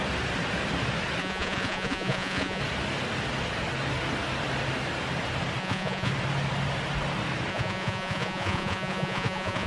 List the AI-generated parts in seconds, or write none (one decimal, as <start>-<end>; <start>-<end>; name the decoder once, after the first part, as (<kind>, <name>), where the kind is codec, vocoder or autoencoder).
1.2-2.6 (vocoder, Vocos); 5.6-6.1; 7.5-9.7